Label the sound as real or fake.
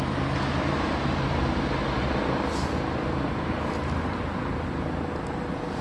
real